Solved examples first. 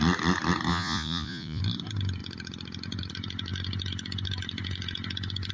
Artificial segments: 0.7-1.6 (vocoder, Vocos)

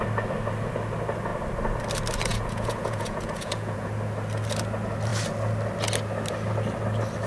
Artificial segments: 2.3-3.9 (vocoder, Vocos)

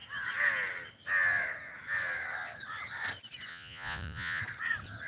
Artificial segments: 3.5-4.4 (vocoder, Vocos)

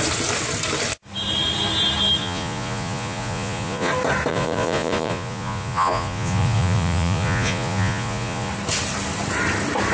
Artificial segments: 2.2-3.9 (vocoder, Vocos); 4.3-8.5

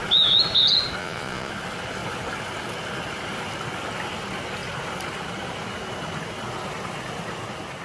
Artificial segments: 1.0-1.5 (vocoder, Vocos)